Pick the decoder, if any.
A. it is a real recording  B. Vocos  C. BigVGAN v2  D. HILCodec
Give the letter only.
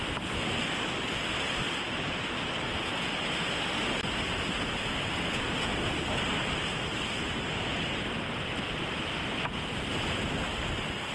A